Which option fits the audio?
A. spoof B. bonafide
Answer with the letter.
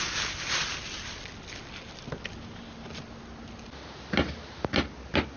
B